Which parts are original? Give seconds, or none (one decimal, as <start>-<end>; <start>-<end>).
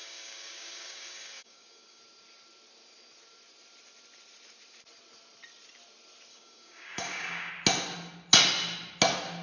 2.0-6.3; 7.5-9.4